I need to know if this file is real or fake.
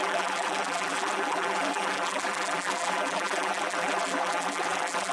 fake